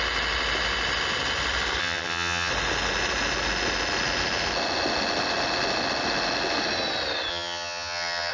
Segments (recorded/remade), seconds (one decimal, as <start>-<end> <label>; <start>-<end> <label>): 0.0-1.8 recorded; 1.8-2.5 remade; 2.5-7.3 recorded; 7.3-8.3 remade